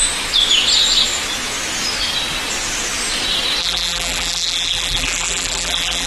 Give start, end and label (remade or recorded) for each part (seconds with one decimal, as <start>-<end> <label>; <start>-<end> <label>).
0.0-3.6 recorded; 3.6-6.1 remade